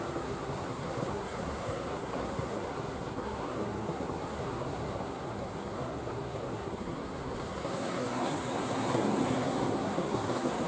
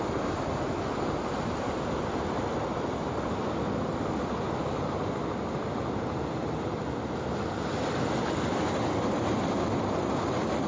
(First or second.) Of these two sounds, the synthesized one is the first